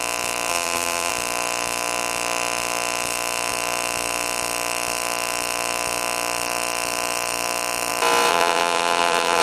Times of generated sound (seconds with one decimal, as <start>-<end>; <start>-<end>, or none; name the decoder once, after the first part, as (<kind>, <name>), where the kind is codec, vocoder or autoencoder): 0.5-1.1 (vocoder, BigVGAN v2); 8.3-9.4